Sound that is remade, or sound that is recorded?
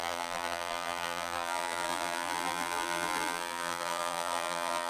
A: remade